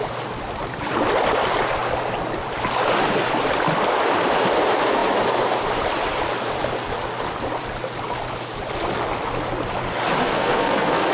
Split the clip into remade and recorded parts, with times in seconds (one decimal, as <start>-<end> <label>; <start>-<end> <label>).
0.0-10.2 recorded; 10.2-11.1 remade